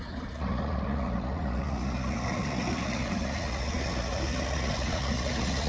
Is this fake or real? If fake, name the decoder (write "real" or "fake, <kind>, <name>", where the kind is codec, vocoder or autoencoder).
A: fake, vocoder, Vocos